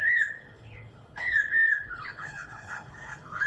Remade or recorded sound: remade